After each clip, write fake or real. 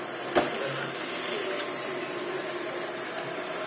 real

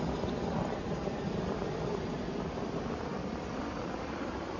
real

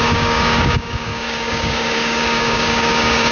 fake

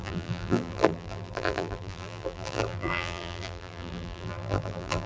fake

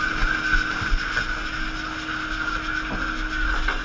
real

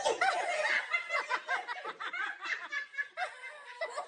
real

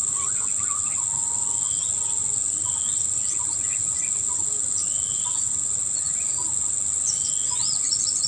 real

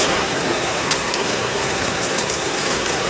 fake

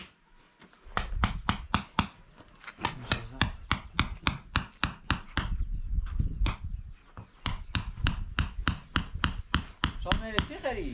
real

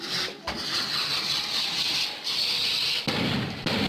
real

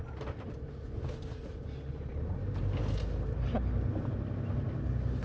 real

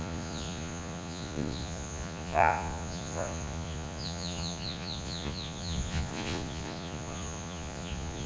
fake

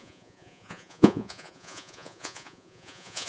fake